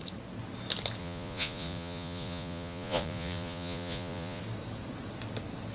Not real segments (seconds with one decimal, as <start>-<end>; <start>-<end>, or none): 1.0-4.4

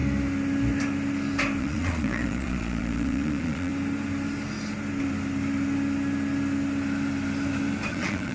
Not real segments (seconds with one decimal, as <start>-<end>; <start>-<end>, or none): 1.6-3.7; 7.9-8.3

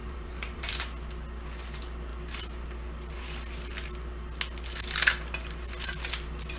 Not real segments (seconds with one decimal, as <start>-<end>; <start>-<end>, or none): 0.0-0.8

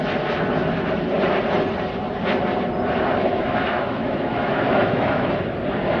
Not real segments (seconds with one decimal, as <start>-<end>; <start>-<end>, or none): 3.2-5.3